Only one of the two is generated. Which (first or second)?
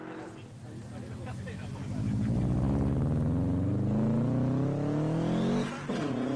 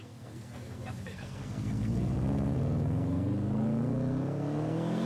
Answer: second